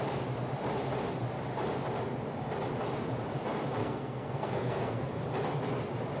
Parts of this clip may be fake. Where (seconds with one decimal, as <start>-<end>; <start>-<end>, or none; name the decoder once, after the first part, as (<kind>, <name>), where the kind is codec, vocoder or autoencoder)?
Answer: 3.8-5.1 (codec, SNAC)